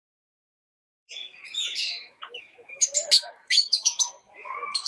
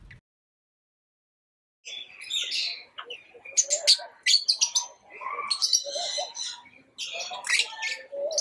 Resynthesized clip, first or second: first